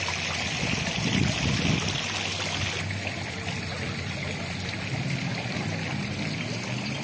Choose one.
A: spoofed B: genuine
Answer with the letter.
B